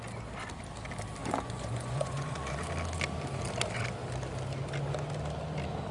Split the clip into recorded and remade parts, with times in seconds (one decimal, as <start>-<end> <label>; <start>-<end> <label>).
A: 0.0-1.2 recorded; 1.2-2.6 remade; 2.6-5.9 recorded